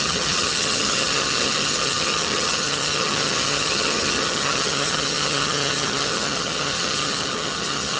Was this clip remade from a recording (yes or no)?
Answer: yes